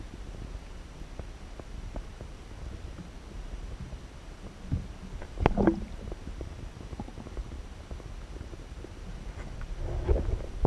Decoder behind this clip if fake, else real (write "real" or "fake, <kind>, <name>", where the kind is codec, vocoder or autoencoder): real